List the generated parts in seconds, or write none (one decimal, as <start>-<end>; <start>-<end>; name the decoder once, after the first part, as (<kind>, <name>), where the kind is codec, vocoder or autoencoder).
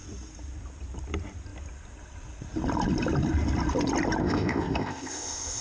4.2-5.6 (codec, ZipCodec)